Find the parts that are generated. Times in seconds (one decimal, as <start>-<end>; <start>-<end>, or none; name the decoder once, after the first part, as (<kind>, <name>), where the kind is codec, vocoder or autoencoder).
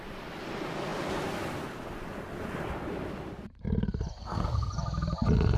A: 4.2-4.7 (codec, SNAC)